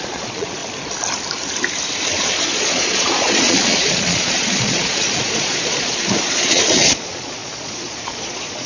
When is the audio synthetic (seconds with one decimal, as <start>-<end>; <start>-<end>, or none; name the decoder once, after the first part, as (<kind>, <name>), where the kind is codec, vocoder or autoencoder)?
0.0-0.6 (vocoder, Vocos); 2.2-8.7